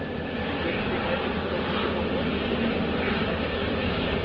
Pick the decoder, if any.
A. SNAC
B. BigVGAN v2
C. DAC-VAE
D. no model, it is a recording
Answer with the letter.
D